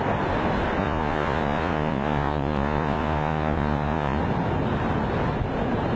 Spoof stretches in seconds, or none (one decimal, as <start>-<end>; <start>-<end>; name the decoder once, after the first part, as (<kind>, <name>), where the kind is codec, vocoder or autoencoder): 0.8-4.2 (vocoder, Vocos)